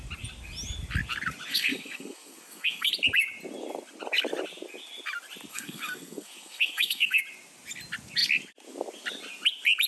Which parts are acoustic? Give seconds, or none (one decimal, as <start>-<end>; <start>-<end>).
0.0-1.5; 2.9-5.5; 7.2-9.9